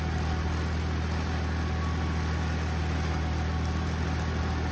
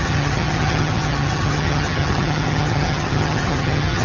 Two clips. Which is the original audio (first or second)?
first